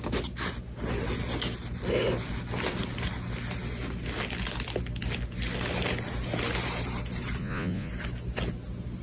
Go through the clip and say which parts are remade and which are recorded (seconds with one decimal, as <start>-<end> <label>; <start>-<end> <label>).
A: 0.0-7.4 recorded; 7.4-7.9 remade; 7.9-9.0 recorded